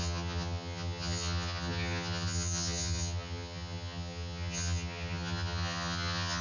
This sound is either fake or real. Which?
fake